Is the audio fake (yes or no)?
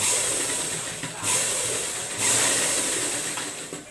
no